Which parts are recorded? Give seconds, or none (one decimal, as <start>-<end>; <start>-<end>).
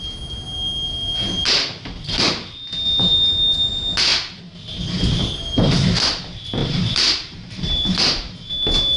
0.0-4.1; 5.0-6.6; 8.5-9.0